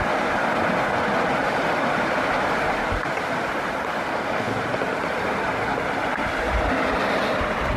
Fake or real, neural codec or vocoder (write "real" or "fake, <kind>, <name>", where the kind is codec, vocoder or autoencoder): real